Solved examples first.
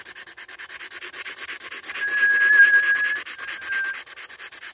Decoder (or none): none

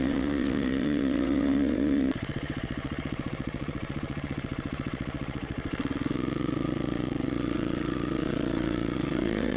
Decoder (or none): vocoder, WaveNeXt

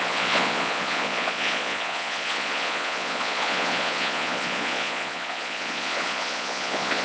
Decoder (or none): vocoder, Vocos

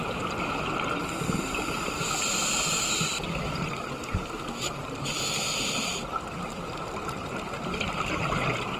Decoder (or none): none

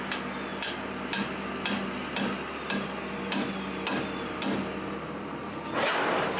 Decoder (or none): none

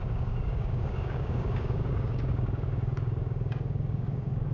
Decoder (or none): codec, DAC